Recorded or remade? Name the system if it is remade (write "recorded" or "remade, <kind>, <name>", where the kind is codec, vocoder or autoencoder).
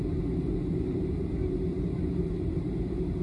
recorded